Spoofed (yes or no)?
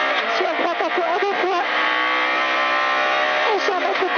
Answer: no